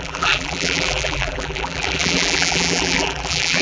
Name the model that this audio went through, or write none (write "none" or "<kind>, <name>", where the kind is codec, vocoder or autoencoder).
vocoder, BigVGAN v2